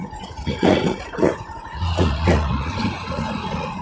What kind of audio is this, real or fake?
fake